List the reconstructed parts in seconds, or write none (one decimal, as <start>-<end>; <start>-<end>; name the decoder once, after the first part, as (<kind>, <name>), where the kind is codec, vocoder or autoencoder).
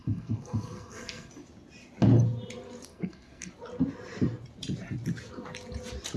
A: 0.0-1.3 (codec, SNAC); 2.9-3.5